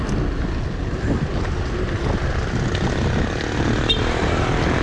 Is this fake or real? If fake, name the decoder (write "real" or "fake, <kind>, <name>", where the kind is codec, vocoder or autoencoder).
real